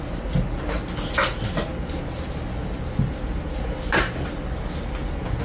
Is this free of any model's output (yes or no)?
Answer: yes